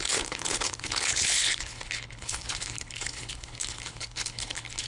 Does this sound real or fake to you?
fake